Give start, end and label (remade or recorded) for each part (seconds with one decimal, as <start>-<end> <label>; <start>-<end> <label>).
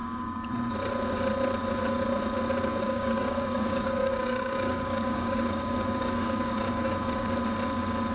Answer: 0.0-0.5 remade; 0.5-2.7 recorded; 2.7-7.4 remade; 7.4-8.1 recorded